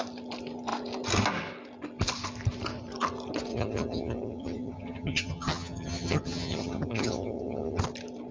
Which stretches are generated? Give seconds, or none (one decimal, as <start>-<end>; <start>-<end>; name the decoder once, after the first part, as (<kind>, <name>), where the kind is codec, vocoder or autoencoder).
3.5-7.8 (vocoder, HiFi-GAN)